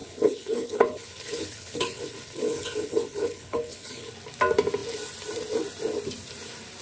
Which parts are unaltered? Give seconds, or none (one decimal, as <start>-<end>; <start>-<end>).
4.1-6.8